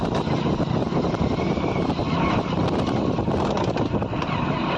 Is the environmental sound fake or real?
real